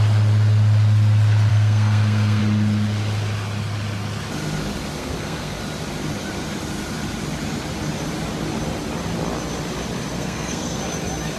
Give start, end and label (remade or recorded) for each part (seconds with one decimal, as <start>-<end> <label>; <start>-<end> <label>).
0.0-1.5 recorded; 1.5-2.4 remade; 2.4-5.0 recorded; 5.0-5.6 remade; 5.6-10.1 recorded; 10.1-10.8 remade; 10.8-11.4 recorded